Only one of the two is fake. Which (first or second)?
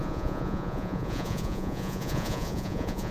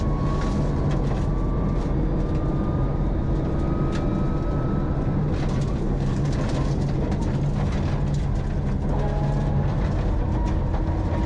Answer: first